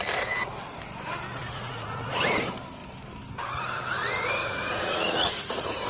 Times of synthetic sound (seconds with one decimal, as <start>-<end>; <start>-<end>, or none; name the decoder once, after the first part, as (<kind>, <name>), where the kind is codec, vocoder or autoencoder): 1.4-2.2 (vocoder, Vocos); 4.4-5.9